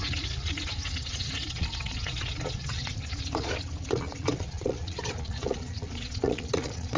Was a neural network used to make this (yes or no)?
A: yes